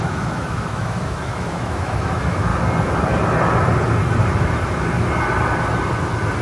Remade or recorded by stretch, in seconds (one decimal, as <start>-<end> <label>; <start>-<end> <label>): 0.0-2.5 remade; 2.5-6.4 recorded